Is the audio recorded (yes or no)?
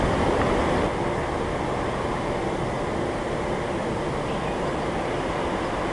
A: yes